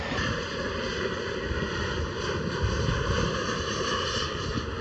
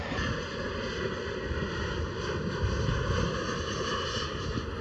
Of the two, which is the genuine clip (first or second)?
second